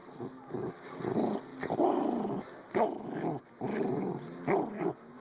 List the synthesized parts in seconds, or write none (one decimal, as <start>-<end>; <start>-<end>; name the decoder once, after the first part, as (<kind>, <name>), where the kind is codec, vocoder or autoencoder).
none